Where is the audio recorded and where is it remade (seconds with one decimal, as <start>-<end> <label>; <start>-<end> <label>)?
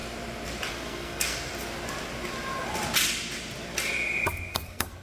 0.0-0.7 recorded; 0.7-1.5 remade; 1.5-4.5 recorded; 4.5-5.0 remade